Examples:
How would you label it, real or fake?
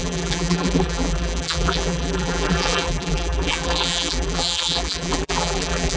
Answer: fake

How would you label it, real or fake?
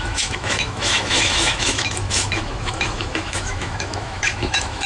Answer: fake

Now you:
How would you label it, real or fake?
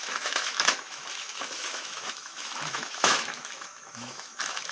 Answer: fake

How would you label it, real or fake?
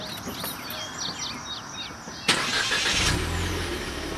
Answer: real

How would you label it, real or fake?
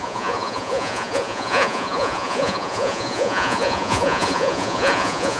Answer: fake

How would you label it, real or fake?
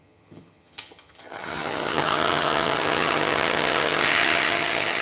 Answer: fake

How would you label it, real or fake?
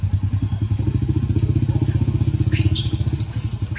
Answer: real